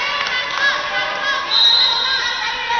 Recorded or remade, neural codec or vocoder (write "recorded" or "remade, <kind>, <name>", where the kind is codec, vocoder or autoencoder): recorded